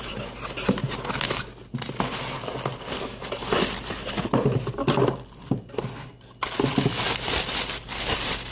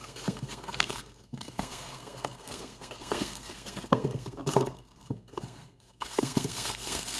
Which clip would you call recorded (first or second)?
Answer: first